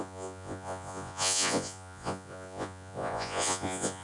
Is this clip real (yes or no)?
no